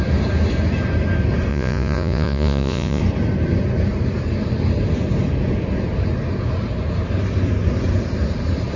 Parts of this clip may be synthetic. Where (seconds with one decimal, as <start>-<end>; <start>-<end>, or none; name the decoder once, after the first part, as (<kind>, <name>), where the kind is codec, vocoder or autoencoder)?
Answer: 1.5-3.0 (vocoder, Vocos)